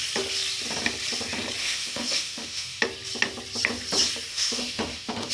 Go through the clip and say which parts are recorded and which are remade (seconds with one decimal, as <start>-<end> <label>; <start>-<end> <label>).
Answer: 0.0-1.6 recorded; 1.6-2.8 remade; 2.8-4.3 recorded; 4.3-5.3 remade